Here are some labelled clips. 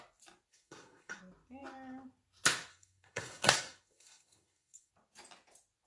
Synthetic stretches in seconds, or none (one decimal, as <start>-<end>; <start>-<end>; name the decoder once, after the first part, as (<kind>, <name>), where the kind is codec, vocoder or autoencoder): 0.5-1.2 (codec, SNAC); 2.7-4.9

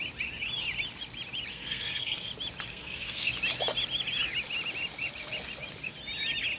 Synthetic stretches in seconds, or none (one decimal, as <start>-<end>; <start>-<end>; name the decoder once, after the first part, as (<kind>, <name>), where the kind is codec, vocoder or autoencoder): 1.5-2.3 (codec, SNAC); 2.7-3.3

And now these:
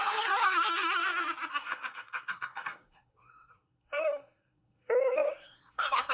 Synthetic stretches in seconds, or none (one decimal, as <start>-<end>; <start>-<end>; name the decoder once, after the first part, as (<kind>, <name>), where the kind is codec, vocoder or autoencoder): 0.0-1.0 (codec, SNAC); 1.5-6.1